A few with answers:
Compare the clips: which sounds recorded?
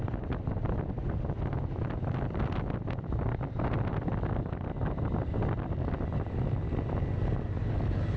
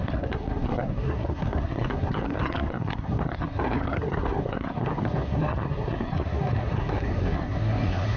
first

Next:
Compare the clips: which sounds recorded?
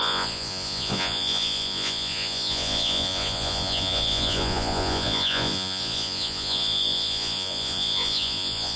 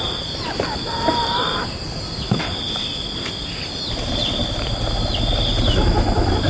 second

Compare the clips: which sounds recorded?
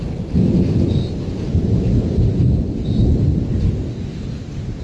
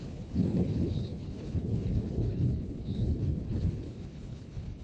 first